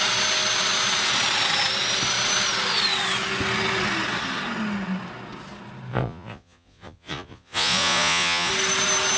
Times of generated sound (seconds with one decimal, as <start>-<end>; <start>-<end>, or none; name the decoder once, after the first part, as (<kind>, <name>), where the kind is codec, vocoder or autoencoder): 5.9-8.5 (vocoder, Vocos)